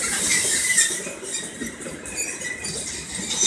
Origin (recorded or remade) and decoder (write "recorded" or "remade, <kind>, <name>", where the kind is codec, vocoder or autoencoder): recorded